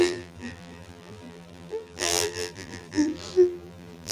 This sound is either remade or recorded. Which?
remade